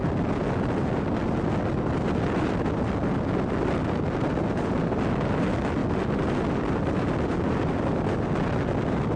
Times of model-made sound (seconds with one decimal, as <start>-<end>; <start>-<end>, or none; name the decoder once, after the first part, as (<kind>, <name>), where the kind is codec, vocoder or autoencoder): none